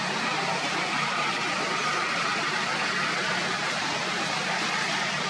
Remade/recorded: recorded